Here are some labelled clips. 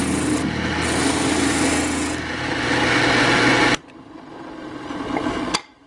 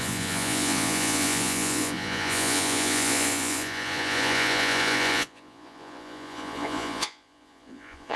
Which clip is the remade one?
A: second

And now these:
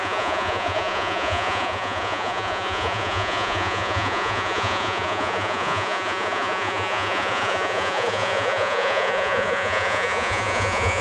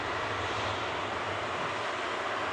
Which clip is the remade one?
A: first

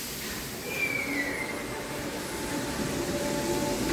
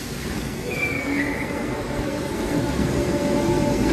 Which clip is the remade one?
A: second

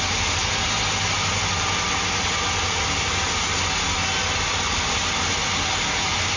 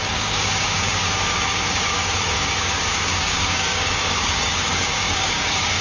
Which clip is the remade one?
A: second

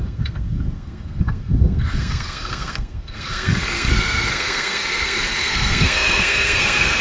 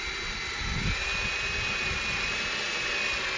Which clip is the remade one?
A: first